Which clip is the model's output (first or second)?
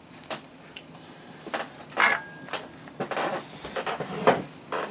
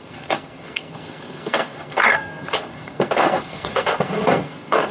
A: second